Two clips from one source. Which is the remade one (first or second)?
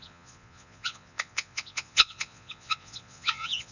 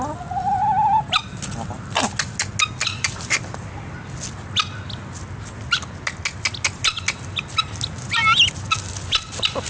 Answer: first